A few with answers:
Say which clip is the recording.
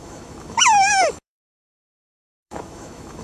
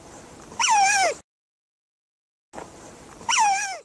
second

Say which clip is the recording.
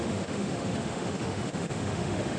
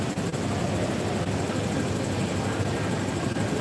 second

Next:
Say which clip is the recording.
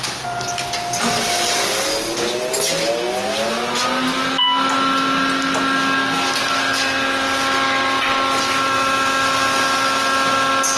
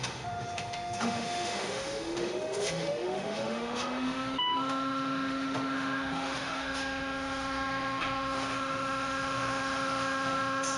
first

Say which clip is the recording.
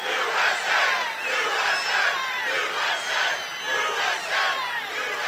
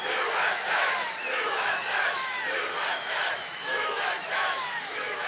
first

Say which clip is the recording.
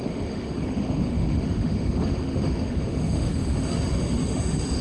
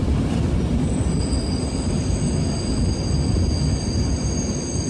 second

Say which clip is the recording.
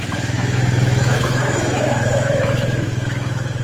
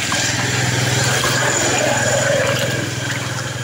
second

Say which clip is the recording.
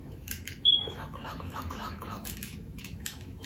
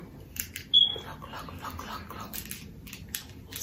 second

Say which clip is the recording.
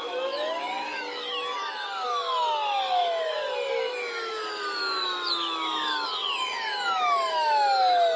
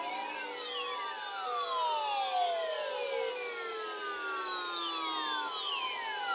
second